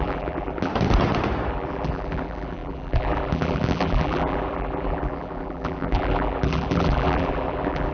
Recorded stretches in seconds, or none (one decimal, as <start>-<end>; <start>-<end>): 0.7-1.5